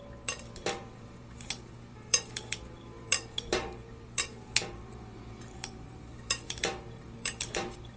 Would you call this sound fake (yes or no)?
yes